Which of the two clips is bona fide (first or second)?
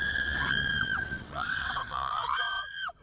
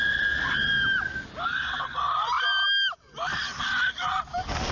second